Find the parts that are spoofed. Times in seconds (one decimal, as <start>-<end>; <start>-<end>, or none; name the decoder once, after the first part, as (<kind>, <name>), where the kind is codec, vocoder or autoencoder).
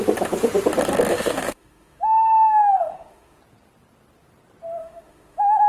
1.1-3.4 (autoencoder, DAC-VAE); 4.8-5.7